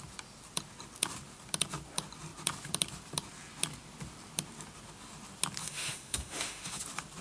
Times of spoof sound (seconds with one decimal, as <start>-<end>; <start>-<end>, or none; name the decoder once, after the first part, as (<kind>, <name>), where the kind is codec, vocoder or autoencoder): 5.6-6.8 (autoencoder, DAC-VAE)